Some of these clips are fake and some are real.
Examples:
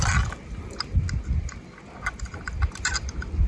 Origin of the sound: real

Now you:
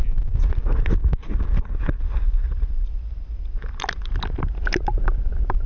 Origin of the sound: real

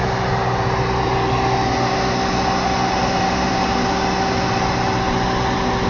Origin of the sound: real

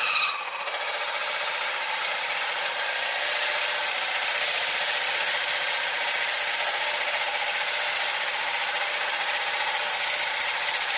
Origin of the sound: real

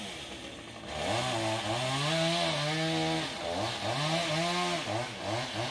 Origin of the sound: real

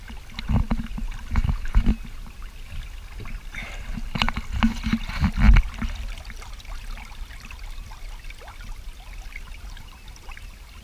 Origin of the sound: real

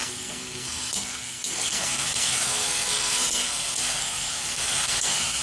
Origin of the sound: fake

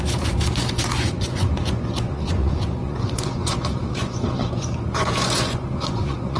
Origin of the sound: fake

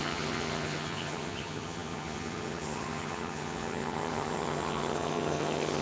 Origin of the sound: fake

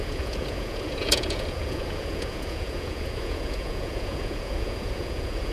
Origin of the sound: fake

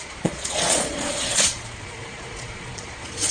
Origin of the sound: fake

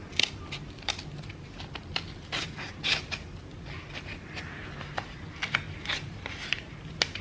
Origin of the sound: real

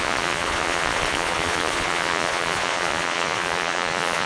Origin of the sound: fake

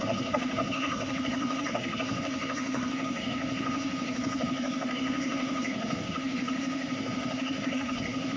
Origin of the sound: fake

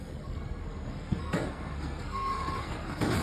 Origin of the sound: fake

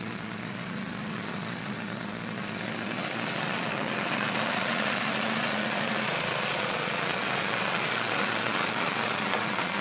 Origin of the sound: fake